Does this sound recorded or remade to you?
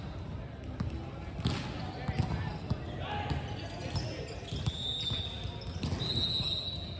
recorded